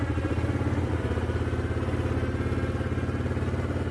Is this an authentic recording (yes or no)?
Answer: yes